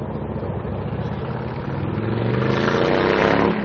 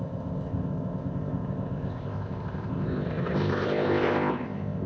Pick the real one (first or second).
first